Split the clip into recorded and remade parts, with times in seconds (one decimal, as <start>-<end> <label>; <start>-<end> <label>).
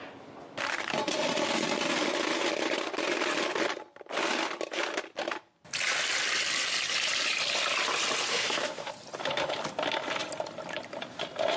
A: 0.0-8.3 recorded; 8.3-8.9 remade; 8.9-11.6 recorded